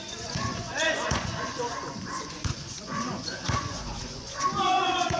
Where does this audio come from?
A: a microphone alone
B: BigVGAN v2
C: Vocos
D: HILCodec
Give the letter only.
C